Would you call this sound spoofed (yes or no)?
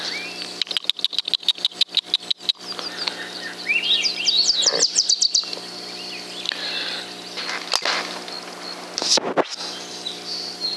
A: no